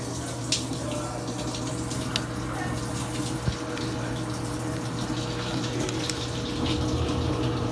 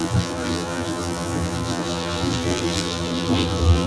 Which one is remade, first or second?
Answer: second